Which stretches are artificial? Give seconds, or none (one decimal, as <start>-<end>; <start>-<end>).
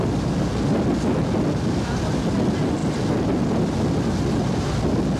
none